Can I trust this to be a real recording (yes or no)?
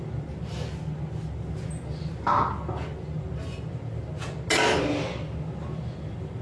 yes